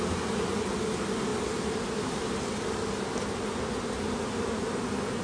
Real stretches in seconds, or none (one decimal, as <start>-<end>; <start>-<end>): 0.0-5.2